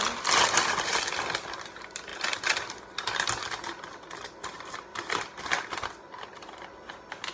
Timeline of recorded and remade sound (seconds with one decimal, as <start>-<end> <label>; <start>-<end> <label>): 0.0-4.9 recorded; 4.9-5.4 remade; 5.4-7.3 recorded